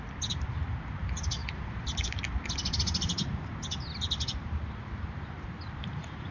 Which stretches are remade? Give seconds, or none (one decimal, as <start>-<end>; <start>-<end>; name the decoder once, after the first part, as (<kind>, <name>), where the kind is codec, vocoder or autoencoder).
none